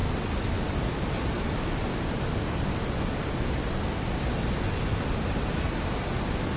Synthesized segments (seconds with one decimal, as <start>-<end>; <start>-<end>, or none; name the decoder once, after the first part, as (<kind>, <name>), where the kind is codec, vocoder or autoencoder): none

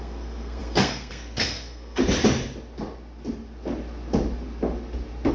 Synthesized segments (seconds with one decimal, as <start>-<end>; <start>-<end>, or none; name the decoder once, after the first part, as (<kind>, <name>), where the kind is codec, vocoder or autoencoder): 0.0-2.0 (codec, SNAC)